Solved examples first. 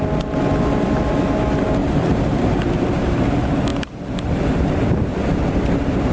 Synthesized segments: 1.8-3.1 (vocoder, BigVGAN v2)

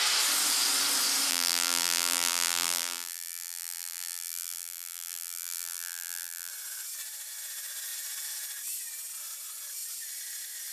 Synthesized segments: 1.3-6.5 (vocoder, BigVGAN v2)

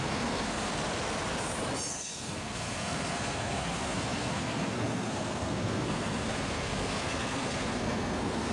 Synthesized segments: 0.0-0.7 (codec, SNAC); 1.9-8.5

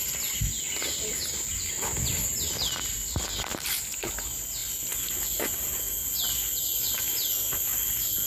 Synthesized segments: none

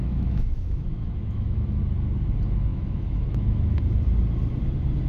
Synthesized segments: 0.0-1.8 (autoencoder, DAC-VAE); 2.7-3.8

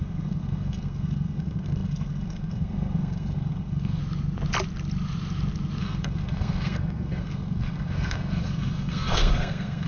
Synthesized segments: 0.0-4.0 (codec, SNAC); 5.8-9.9

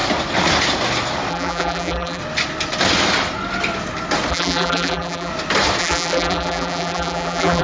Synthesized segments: 1.3-2.2 (vocoder, BigVGAN v2); 4.3-5.3; 5.8-7.6